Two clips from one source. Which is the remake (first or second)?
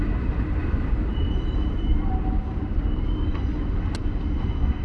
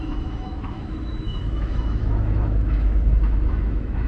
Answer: second